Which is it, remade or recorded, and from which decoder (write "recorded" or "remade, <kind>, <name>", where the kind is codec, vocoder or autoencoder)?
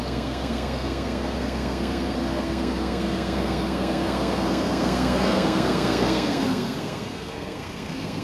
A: remade, codec, SNAC